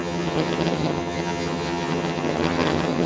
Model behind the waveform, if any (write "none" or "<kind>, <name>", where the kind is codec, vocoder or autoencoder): vocoder, HiFi-GAN